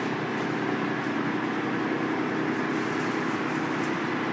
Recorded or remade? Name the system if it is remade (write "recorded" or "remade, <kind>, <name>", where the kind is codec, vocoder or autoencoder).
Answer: recorded